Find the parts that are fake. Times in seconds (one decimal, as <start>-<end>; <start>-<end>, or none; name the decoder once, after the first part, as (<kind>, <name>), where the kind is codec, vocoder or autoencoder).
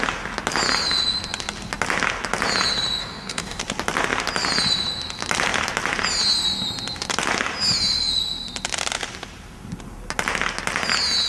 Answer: 3.0-3.6 (codec, DAC)